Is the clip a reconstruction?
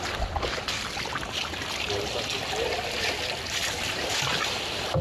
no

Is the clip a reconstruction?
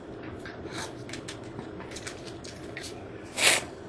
no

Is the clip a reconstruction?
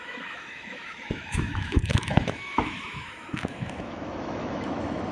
yes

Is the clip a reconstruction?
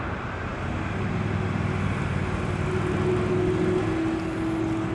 no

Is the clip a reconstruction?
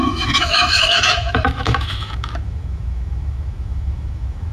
yes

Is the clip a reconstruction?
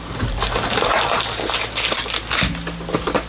no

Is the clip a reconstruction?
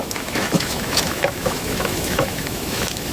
yes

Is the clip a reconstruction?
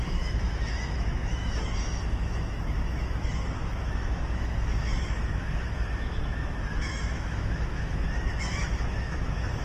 yes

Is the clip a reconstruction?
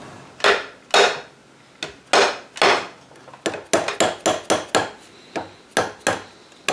no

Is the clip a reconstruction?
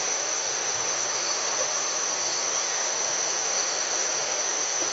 yes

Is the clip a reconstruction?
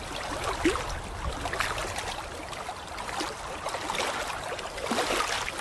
no